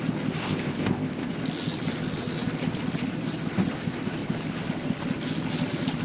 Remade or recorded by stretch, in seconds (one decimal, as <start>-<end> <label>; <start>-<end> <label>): 0.0-0.4 recorded; 0.4-1.3 remade; 1.3-6.0 recorded